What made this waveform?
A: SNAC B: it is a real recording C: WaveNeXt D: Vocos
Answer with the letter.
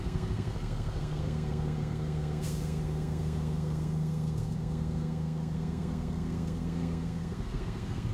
A